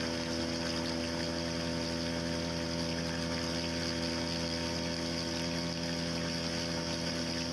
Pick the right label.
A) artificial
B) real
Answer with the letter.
B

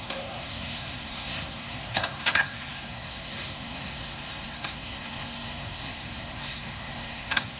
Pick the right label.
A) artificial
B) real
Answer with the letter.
A